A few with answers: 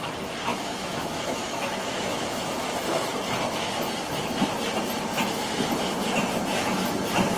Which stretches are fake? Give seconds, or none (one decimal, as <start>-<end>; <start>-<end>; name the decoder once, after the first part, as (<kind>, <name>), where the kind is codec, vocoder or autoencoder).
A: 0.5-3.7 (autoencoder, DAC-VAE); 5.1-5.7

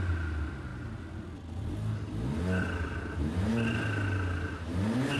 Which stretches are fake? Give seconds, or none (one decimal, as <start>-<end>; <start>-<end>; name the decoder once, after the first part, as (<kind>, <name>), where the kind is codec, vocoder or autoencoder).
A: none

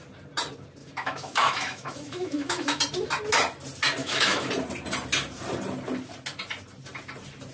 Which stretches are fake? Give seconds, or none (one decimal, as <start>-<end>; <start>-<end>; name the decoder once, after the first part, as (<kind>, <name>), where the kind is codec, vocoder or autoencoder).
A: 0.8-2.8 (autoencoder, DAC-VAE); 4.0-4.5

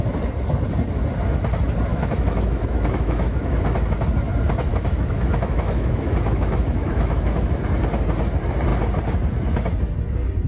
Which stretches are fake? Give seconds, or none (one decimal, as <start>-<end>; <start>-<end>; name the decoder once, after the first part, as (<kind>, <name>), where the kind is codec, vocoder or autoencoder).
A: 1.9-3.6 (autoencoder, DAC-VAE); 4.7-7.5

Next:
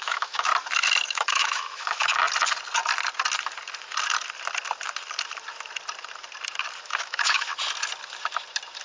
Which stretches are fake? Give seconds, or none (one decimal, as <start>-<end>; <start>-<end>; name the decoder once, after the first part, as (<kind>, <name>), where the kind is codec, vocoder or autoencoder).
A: 0.0-0.5 (autoencoder, DAC-VAE); 1.1-2.2; 6.8-7.5

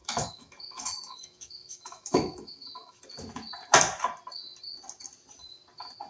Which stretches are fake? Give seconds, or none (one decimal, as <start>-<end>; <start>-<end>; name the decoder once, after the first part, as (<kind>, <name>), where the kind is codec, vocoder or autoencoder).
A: 0.0-3.0 (autoencoder, DAC-VAE)